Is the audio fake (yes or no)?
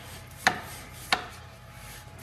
no